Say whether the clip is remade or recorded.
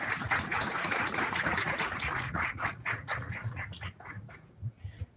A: remade